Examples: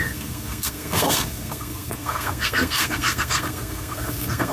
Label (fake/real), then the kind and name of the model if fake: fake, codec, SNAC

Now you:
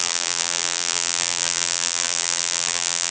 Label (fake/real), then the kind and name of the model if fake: fake, vocoder, BigVGAN v2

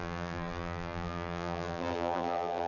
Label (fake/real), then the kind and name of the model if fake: fake, vocoder, BigVGAN v2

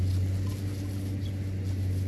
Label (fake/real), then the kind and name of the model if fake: real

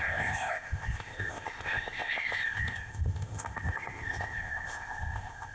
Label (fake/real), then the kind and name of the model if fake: fake, codec, ZipCodec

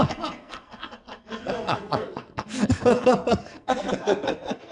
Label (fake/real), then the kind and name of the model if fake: fake, codec, SNAC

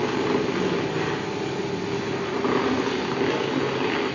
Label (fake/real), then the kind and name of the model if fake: real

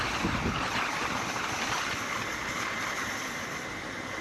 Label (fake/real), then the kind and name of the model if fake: real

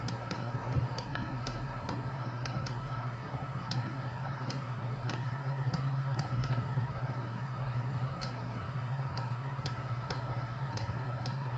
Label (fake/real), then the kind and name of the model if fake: fake, codec, SNAC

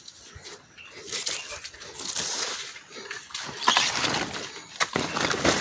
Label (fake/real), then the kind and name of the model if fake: real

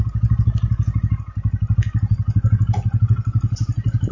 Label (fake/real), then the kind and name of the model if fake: real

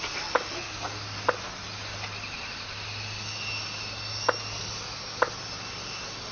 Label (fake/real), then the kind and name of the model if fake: real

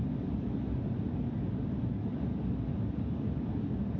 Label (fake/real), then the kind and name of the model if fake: real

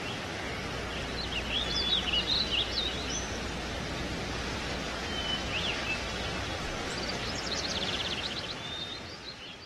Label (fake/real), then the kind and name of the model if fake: fake, vocoder, BigVGAN v2